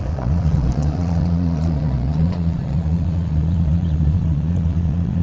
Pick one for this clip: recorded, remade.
remade